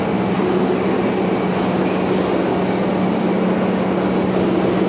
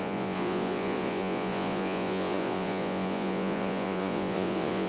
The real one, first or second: first